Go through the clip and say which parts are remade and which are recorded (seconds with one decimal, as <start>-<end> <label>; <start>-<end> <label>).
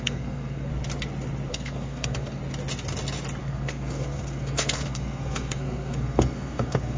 0.0-0.7 remade; 0.7-1.5 recorded; 1.5-2.4 remade; 2.4-3.4 recorded; 3.4-7.0 remade